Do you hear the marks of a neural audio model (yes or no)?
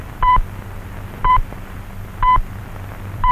no